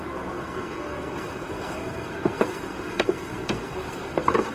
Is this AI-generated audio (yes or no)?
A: yes